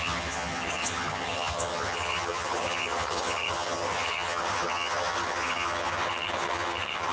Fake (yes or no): yes